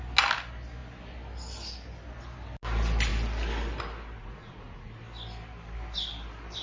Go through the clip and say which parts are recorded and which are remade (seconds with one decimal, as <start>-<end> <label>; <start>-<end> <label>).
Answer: 0.0-4.2 recorded; 4.2-5.0 remade; 5.0-6.6 recorded